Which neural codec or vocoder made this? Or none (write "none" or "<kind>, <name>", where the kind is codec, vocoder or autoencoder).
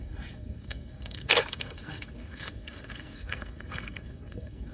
codec, SNAC